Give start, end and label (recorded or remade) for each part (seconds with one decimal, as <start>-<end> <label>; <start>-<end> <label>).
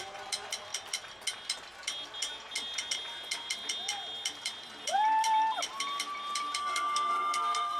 0.0-6.6 recorded; 6.6-7.8 remade